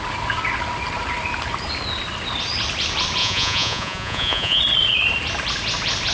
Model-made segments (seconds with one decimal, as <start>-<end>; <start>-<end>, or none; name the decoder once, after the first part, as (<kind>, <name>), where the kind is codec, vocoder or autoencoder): 3.2-4.6 (vocoder, Vocos)

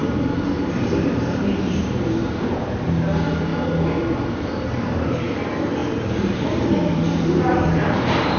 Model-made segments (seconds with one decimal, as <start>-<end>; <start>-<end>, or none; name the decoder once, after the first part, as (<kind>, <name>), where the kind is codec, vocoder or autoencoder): 0.0-3.5 (vocoder, BigVGAN v2); 4.3-8.4

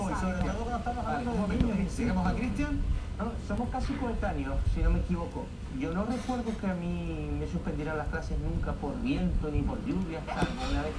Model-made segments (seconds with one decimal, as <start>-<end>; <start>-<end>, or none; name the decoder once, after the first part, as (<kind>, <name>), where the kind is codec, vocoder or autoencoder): 2.9-4.3 (codec, DAC); 5.0-5.8; 8.8-9.7

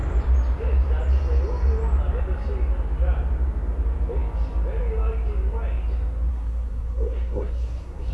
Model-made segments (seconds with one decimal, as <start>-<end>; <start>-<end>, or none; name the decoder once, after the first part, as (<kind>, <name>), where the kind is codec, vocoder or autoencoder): 6.3-8.1 (codec, SNAC)

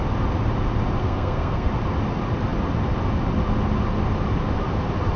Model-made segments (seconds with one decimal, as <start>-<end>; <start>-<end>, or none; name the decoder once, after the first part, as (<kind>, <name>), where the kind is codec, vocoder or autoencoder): 1.0-1.7 (codec, SNAC)